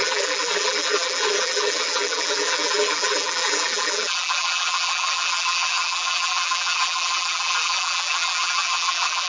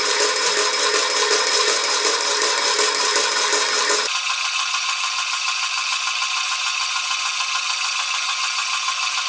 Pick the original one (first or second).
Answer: second